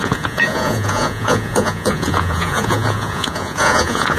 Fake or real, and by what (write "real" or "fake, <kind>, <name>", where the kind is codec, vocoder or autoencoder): fake, vocoder, Vocos